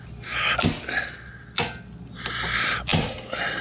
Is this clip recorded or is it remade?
recorded